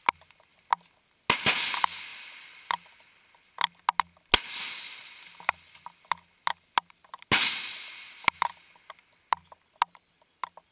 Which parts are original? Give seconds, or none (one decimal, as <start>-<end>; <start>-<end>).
0.0-10.7